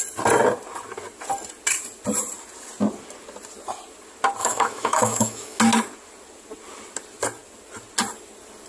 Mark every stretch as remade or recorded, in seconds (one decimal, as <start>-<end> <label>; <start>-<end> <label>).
0.0-4.4 recorded; 4.4-5.6 remade; 5.6-8.7 recorded